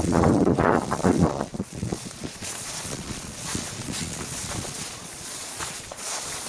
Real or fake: fake